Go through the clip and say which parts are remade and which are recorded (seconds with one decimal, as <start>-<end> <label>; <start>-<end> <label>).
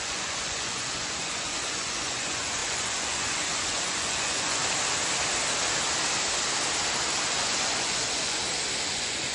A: 0.0-4.6 remade; 4.6-7.3 recorded; 7.3-8.4 remade; 8.4-8.9 recorded; 8.9-9.3 remade